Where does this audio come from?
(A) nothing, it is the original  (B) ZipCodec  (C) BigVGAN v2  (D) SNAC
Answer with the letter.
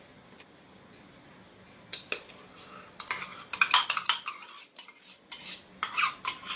A